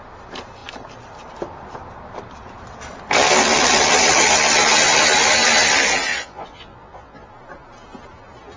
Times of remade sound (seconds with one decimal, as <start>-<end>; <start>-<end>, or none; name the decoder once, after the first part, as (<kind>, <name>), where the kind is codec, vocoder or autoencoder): 6.1-7.3 (vocoder, Vocos)